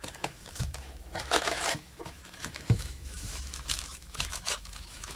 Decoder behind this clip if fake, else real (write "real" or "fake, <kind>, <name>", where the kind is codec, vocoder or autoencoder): fake, autoencoder, DAC-VAE